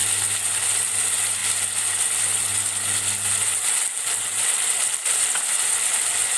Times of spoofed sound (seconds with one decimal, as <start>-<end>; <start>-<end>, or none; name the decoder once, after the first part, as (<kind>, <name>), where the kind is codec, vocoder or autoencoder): none